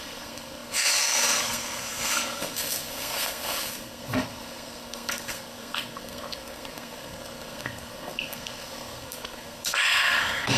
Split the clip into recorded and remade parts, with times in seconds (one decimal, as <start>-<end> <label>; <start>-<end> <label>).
0.0-10.6 remade